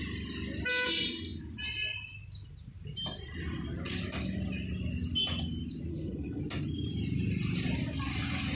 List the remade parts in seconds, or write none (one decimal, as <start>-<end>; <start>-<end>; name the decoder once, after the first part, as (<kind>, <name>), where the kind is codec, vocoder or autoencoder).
5.9-6.4 (codec, HILCodec)